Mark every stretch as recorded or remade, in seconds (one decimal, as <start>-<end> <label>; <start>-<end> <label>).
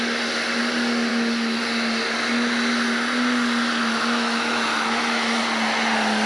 0.0-1.1 recorded; 1.1-1.6 remade; 1.6-3.8 recorded; 3.8-5.4 remade; 5.4-6.3 recorded